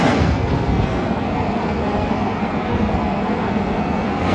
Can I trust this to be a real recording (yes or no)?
no